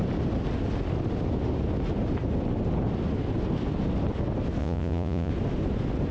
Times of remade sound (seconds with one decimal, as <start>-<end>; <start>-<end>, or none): 4.6-5.3